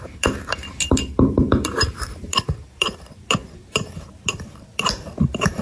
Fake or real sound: fake